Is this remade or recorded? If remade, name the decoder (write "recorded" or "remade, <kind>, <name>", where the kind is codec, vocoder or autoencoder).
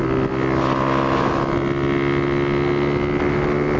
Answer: recorded